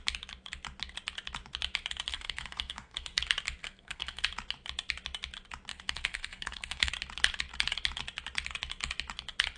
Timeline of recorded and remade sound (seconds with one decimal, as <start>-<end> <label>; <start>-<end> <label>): 0.0-2.1 recorded; 2.1-3.2 remade; 3.2-3.6 recorded; 3.6-4.2 remade; 4.2-5.7 recorded; 5.7-6.9 remade; 6.9-9.6 recorded